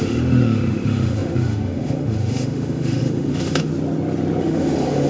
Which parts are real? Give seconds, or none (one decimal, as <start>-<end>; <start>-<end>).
3.7-4.4